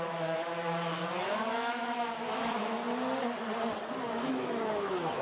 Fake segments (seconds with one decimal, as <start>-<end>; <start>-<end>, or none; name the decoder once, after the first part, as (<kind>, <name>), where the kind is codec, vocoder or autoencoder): 0.0-2.8 (autoencoder, DAC-VAE); 4.0-5.2